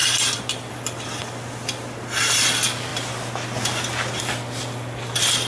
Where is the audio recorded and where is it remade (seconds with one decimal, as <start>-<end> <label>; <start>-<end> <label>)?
0.0-5.5 recorded